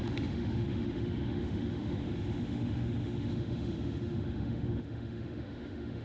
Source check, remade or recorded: remade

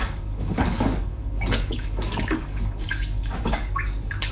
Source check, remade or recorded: remade